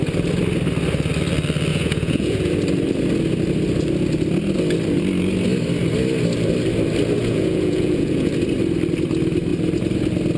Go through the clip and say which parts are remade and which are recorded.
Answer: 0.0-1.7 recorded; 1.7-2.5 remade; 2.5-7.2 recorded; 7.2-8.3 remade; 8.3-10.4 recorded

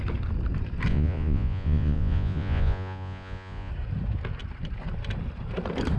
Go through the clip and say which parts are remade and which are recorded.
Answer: 0.0-0.9 recorded; 0.9-3.7 remade; 3.7-6.0 recorded

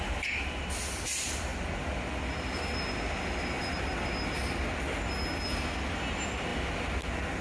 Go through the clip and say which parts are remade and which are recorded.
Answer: 0.0-7.4 recorded

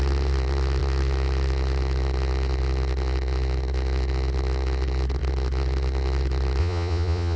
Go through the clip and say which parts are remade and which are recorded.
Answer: 0.0-6.6 recorded; 6.6-7.4 remade